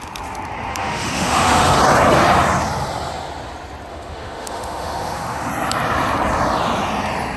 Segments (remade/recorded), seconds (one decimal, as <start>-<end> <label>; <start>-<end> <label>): 0.0-0.7 recorded; 0.7-1.8 remade; 1.8-3.9 recorded; 3.9-5.5 remade; 5.5-7.4 recorded